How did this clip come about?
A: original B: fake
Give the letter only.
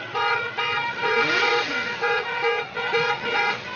B